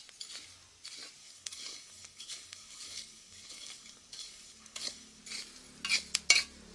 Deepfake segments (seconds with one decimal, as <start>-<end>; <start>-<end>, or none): 1.2-5.2